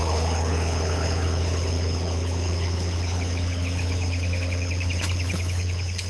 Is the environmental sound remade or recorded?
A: remade